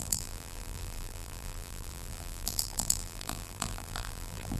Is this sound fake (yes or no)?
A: yes